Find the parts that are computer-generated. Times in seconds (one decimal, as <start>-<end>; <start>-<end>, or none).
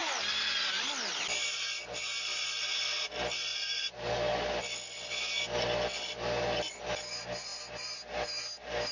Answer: 3.5-4.1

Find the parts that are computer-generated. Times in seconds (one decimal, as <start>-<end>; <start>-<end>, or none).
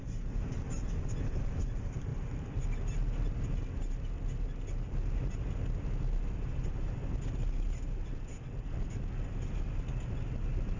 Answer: 0.0-2.1; 6.3-7.0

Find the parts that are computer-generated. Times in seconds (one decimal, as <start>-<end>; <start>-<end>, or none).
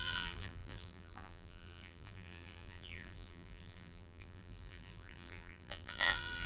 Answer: 0.0-6.5